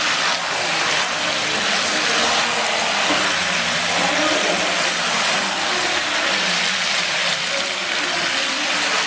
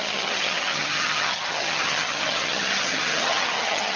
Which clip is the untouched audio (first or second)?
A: first